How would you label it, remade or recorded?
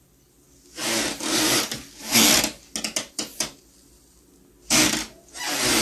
recorded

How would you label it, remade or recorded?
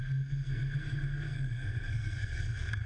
remade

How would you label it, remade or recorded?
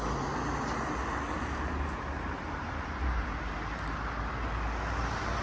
recorded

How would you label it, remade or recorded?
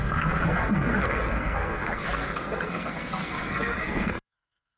remade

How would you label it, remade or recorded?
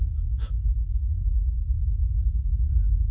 remade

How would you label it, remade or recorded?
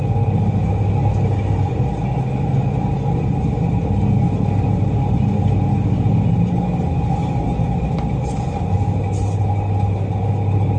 recorded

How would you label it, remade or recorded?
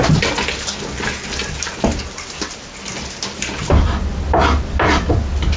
recorded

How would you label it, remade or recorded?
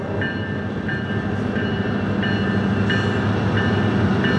recorded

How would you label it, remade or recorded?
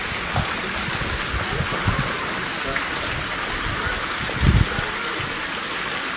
recorded